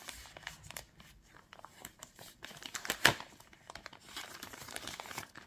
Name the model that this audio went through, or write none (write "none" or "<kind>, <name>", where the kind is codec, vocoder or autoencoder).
vocoder, BigVGAN v2